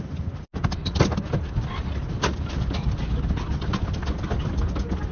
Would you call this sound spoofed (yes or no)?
no